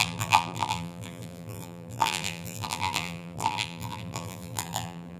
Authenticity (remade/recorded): remade